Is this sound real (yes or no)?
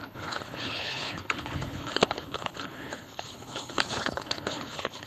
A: no